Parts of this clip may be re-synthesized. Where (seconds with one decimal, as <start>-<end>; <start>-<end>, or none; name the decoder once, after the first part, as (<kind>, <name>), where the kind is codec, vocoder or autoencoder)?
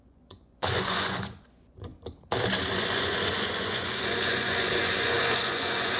0.0-1.9 (vocoder, Vocos); 2.7-6.0